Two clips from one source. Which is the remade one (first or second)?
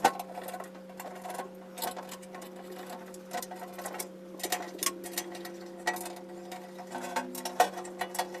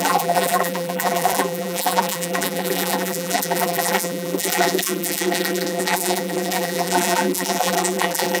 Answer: second